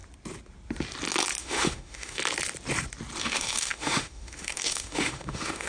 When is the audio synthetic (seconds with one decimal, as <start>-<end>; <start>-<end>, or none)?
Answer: 1.4-2.2; 3.2-5.7